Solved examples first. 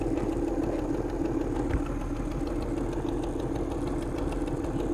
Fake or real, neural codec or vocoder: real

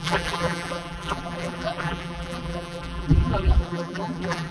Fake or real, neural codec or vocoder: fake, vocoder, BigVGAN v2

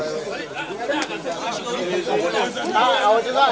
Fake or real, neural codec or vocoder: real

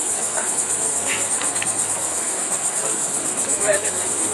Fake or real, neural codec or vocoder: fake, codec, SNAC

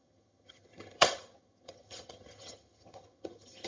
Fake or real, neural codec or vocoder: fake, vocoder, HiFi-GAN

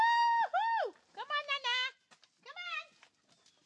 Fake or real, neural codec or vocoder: real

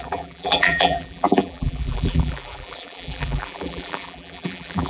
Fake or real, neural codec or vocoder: fake, vocoder, BigVGAN v2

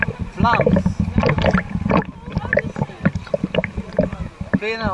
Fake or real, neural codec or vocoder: real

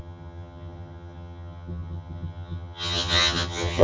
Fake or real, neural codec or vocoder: fake, vocoder, HiFi-GAN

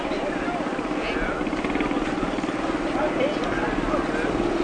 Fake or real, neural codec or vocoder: real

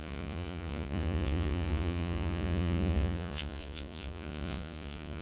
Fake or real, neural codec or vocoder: fake, vocoder, Vocos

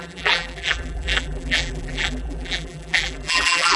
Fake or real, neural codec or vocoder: fake, vocoder, BigVGAN v2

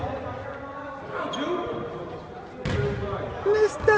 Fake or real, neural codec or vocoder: real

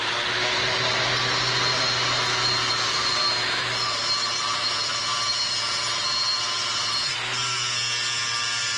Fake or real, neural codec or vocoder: real